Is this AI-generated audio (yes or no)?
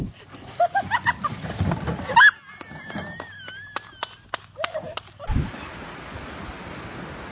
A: no